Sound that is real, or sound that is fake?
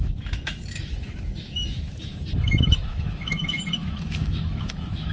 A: fake